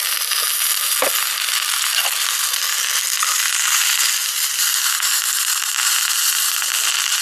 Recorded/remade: recorded